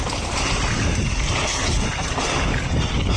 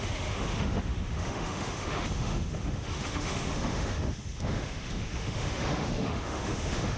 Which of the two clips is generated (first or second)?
second